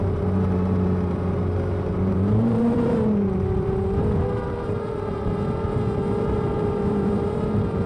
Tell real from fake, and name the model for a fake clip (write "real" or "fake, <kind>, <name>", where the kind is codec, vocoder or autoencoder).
fake, vocoder, BigVGAN v2